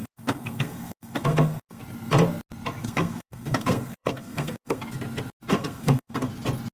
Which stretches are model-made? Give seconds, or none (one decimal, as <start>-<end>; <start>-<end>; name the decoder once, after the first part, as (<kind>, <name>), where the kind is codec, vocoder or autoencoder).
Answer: 0.0-1.8 (codec, SNAC); 2.8-4.8; 5.5-6.3